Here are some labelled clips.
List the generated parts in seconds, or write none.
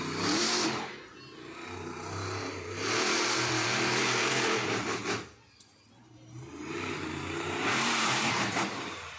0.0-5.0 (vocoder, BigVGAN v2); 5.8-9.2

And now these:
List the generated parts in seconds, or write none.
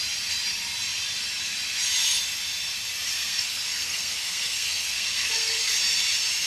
3.1-5.8 (codec, SNAC)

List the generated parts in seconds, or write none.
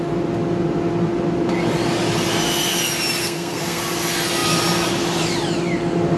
3.2-3.8 (codec, SNAC)